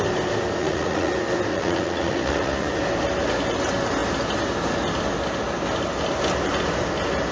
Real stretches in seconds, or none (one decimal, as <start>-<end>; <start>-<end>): 0.0-0.6; 1.1-1.5; 2.7-7.3

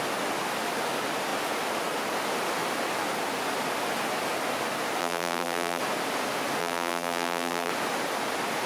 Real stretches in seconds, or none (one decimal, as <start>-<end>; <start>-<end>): 0.0-5.0; 5.8-6.6; 7.7-8.7

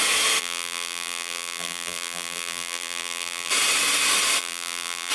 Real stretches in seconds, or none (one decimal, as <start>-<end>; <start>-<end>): 0.0-0.4; 3.5-4.4

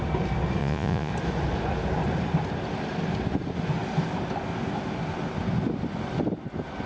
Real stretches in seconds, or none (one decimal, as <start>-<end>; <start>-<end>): 0.0-0.6; 1.1-6.9

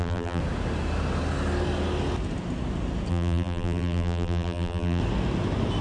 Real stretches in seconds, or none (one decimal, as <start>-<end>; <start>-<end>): 0.4-3.1; 5.0-5.8

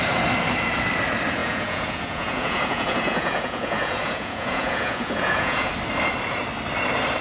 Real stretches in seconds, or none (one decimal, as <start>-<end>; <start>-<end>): 0.0-1.4; 5.7-7.2